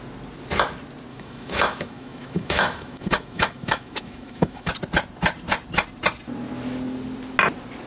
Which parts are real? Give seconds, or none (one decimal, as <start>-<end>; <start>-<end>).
0.0-1.1; 4.7-7.9